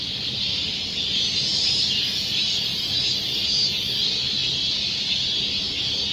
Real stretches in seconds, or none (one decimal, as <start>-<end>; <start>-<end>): 0.0-1.5; 3.0-6.1